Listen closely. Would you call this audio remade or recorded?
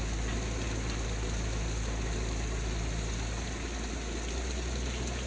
recorded